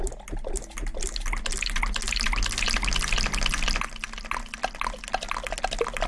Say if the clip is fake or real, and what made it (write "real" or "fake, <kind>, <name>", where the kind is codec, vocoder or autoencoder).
real